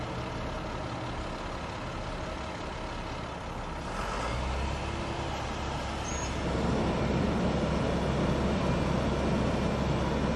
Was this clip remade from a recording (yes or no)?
no